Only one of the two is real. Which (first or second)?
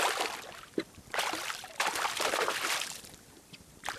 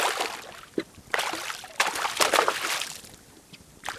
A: second